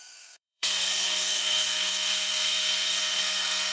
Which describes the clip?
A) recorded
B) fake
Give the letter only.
B